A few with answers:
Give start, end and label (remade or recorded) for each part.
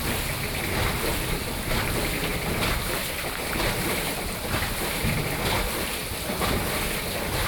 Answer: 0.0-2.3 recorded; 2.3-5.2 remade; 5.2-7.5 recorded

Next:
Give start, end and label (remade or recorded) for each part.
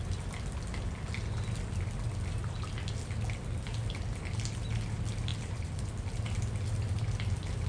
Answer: 0.0-5.3 recorded; 5.3-5.9 remade; 5.9-7.7 recorded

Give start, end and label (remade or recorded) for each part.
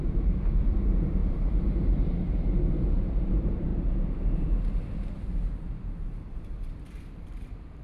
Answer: 0.0-7.8 remade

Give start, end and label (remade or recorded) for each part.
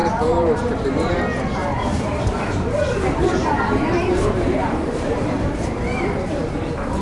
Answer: 0.0-1.2 remade; 1.2-1.6 recorded; 1.6-5.7 remade; 5.7-7.0 recorded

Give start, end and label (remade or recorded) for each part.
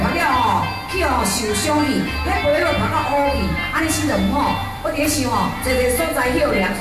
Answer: 0.0-4.6 recorded; 4.6-6.0 remade; 6.0-6.8 recorded